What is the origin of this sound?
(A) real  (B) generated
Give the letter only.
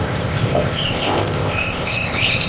B